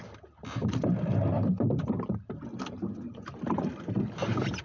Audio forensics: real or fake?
real